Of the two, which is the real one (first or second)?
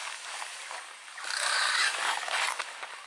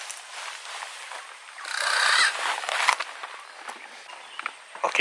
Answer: second